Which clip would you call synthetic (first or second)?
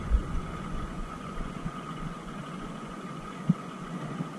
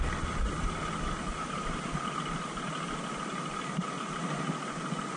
first